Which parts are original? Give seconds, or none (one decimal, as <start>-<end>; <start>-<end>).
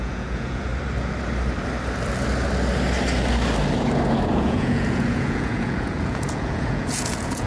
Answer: 0.7-4.3